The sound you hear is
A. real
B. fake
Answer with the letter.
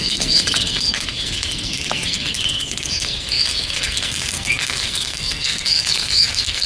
B